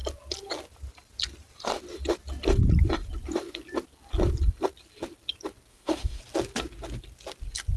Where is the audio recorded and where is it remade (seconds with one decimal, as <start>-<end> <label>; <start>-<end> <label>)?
0.0-5.7 recorded; 5.7-6.2 remade; 6.2-7.8 recorded